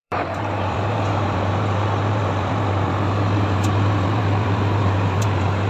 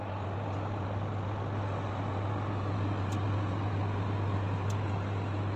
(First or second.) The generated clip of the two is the first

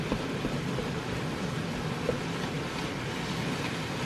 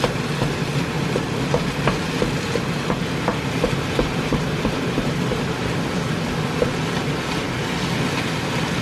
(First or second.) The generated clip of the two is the first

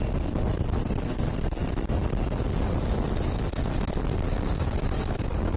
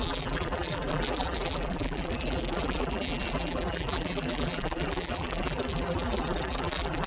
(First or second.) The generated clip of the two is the second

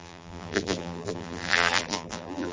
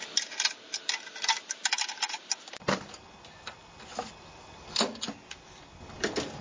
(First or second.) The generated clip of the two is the first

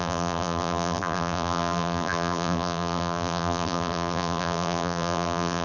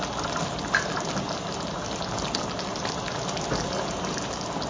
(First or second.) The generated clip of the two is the first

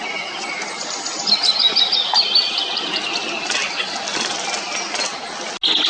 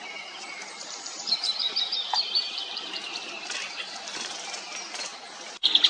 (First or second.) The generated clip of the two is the second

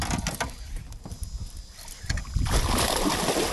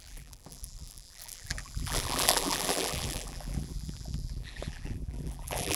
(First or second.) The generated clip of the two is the second